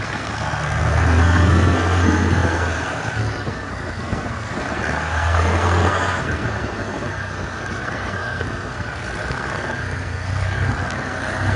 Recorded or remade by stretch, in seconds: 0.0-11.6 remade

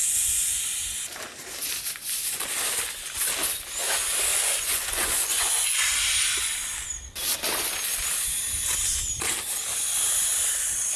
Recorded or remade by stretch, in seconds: 0.0-0.6 remade; 0.6-4.3 recorded; 4.3-5.8 remade; 5.8-11.0 recorded

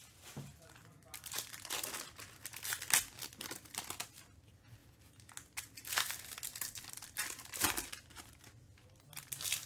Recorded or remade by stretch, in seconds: 0.0-9.7 recorded